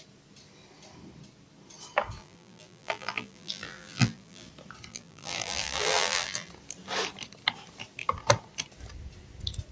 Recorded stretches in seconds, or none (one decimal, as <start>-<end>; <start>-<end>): 0.0-2.2; 4.5-4.9; 6.5-9.7